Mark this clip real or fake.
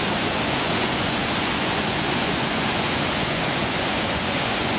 fake